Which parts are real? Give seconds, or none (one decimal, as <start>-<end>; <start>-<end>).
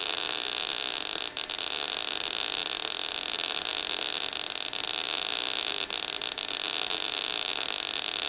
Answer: 0.0-8.3